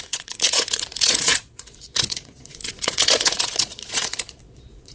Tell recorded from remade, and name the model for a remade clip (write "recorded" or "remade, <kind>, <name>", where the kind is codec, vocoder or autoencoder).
remade, vocoder, Vocos